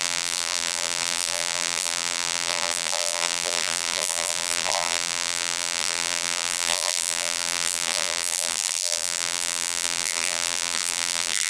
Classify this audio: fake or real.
fake